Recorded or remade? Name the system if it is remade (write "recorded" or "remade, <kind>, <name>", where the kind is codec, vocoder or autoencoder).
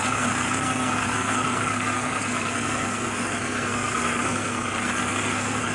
remade, codec, SNAC